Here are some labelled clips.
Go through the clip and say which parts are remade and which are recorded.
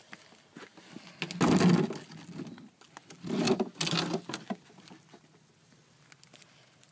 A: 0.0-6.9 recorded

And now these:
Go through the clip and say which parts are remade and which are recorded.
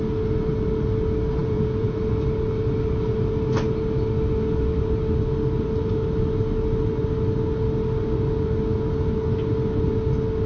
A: 0.0-1.4 recorded; 1.4-2.1 remade; 2.1-10.5 recorded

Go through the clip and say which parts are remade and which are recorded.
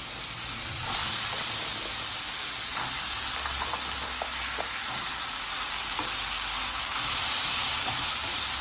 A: 0.0-0.6 recorded; 0.6-1.5 remade; 1.5-8.6 recorded